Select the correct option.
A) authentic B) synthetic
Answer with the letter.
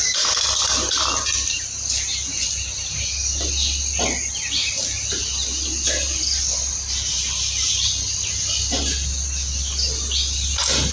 A